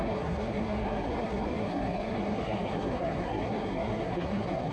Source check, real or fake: fake